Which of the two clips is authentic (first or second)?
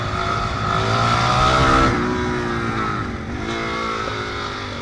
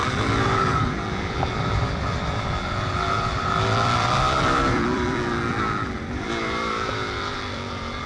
first